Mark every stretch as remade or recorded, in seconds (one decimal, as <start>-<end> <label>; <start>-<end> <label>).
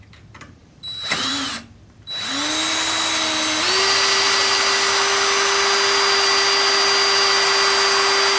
0.0-0.6 recorded; 0.6-2.3 remade; 2.3-8.4 recorded